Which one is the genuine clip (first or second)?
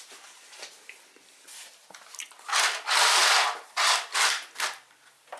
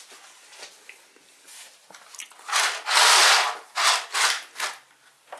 second